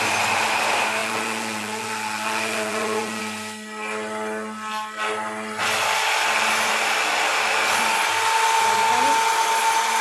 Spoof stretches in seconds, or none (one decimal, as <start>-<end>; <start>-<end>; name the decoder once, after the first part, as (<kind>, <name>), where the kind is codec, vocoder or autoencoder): 1.0-3.2 (vocoder, Vocos)